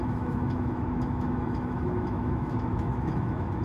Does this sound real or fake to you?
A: fake